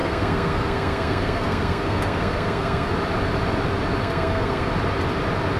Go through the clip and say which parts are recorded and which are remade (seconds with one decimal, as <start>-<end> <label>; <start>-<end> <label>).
0.0-2.9 remade; 2.9-4.0 recorded; 4.0-4.7 remade; 4.7-5.6 recorded